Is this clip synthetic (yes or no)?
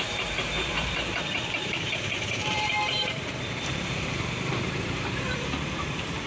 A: yes